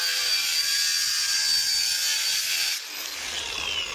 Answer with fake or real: real